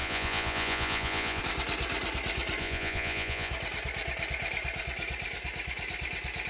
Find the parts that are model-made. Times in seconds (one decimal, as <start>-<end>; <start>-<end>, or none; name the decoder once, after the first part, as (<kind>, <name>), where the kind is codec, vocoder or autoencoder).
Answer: 0.0-1.4 (vocoder, Vocos); 2.6-3.5